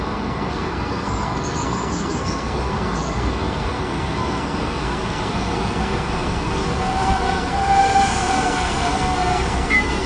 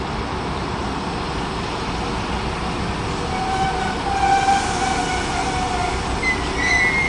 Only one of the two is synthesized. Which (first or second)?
first